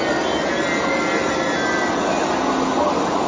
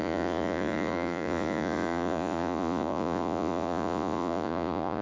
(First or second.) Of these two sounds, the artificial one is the second